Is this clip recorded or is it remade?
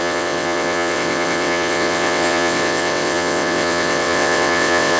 remade